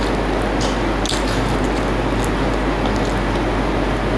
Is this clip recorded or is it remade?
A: recorded